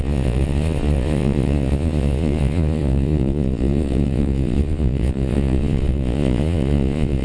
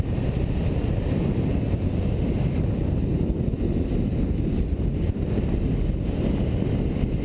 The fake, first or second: first